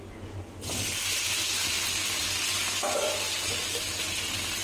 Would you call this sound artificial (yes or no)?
no